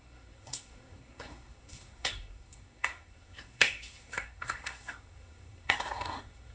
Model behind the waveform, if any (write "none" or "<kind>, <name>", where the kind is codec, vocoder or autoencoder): codec, SNAC